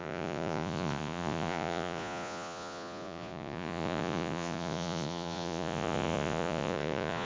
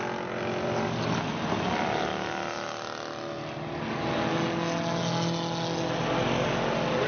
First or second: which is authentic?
second